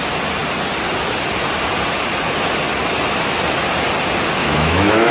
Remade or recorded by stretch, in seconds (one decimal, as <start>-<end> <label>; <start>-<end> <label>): 0.0-4.4 recorded; 4.4-5.1 remade